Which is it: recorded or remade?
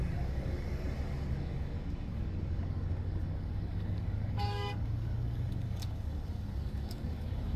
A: remade